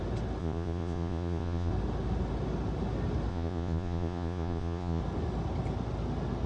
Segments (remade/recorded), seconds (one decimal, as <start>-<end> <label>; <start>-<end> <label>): 0.0-0.4 recorded; 0.4-1.7 remade; 1.7-3.3 recorded; 3.3-5.0 remade; 5.0-6.5 recorded